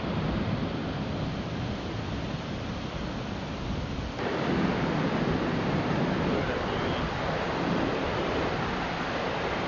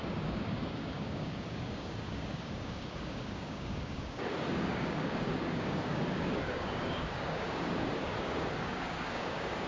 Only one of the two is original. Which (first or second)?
first